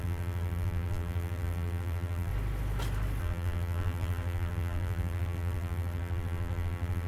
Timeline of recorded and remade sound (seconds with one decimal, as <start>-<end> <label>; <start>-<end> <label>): 0.0-2.3 remade; 2.3-3.2 recorded; 3.2-7.1 remade